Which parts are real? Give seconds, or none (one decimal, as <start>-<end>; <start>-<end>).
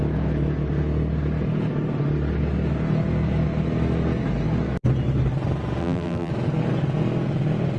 0.0-5.8; 6.3-7.8